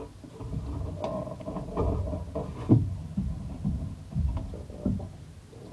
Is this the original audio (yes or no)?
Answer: yes